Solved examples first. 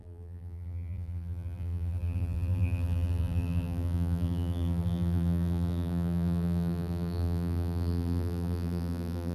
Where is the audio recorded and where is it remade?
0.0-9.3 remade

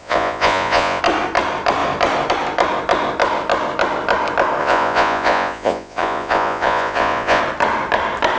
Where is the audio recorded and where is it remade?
0.0-1.0 remade; 1.0-4.6 recorded; 4.6-7.4 remade; 7.4-8.4 recorded

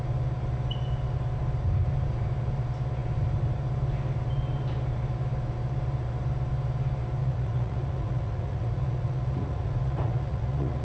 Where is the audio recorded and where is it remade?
0.0-7.2 recorded; 7.2-10.8 remade

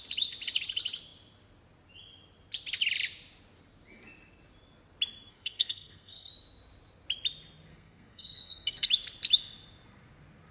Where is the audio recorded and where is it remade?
0.0-5.3 recorded; 5.3-6.3 remade; 6.3-7.7 recorded; 7.7-8.9 remade; 8.9-10.5 recorded

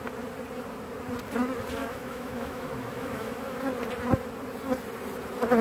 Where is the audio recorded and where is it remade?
0.0-1.8 recorded; 1.8-3.6 remade; 3.6-5.6 recorded

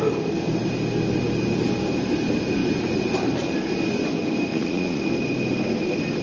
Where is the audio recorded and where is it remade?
0.0-4.5 recorded; 4.5-5.0 remade; 5.0-6.2 recorded

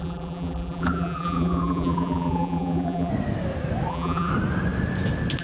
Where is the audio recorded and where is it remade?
0.0-3.1 remade; 3.1-3.9 recorded; 3.9-4.3 remade; 4.3-5.4 recorded